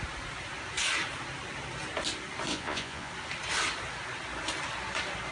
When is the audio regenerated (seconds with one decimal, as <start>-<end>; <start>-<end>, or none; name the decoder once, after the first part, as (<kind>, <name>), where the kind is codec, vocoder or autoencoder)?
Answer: 2.5-3.1 (vocoder, Vocos)